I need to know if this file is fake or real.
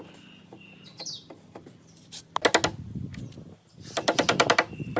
real